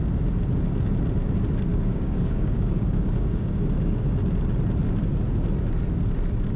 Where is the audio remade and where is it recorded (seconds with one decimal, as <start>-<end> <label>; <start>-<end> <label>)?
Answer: 0.0-1.7 recorded; 1.7-4.2 remade; 4.2-6.6 recorded